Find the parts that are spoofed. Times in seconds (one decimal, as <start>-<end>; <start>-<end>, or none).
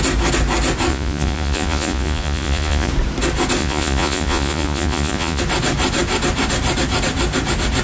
0.9-2.9; 3.6-5.4